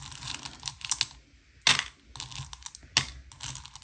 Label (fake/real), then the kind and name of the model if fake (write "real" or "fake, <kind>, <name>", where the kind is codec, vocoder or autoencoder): real